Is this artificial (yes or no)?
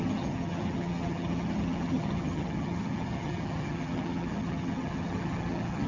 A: yes